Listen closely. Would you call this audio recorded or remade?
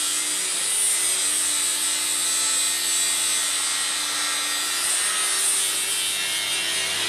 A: recorded